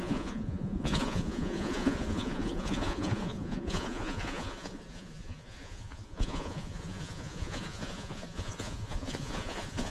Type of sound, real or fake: fake